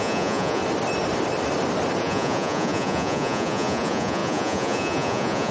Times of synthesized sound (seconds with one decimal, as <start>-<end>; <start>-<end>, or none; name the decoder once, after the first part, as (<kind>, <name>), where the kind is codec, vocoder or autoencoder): 0.0-0.6 (vocoder, Vocos); 2.0-5.5